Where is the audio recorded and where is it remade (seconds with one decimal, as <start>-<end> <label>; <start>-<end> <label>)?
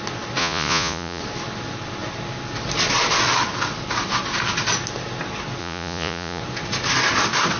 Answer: 0.0-0.4 recorded; 0.4-1.2 remade; 1.2-5.6 recorded; 5.6-6.4 remade; 6.4-7.6 recorded